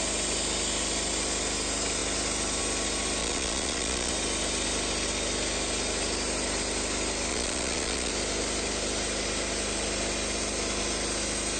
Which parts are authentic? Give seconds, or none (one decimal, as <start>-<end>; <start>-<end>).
0.0-3.2; 4.1-7.3; 8.1-11.6